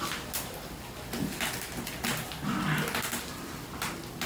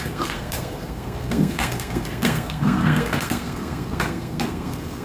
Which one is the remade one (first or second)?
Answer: second